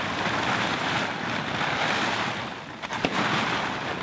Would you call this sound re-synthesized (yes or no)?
no